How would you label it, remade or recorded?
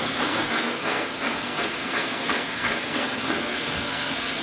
remade